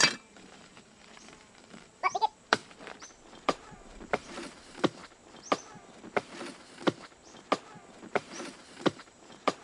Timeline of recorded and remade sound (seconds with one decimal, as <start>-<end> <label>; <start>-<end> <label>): 0.0-2.6 remade; 2.6-3.4 recorded; 3.4-5.0 remade; 5.0-8.0 recorded; 8.0-9.6 remade